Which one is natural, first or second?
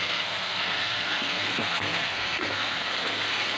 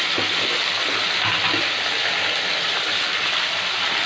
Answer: second